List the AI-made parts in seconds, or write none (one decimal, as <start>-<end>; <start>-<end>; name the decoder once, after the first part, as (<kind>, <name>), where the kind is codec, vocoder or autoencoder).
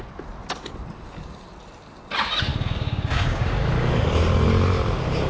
2.5-3.5 (codec, DAC)